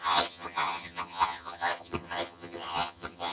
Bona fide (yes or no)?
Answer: no